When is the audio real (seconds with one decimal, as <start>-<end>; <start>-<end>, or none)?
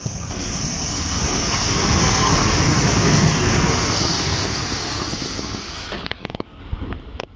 6.6-7.4